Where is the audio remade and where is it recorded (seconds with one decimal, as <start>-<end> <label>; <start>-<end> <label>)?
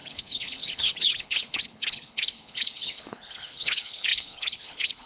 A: 0.0-5.1 remade